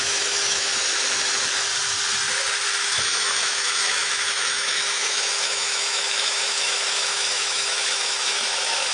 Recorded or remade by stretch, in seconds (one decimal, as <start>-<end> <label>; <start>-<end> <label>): 0.0-0.7 remade; 0.7-2.8 recorded; 2.8-8.9 remade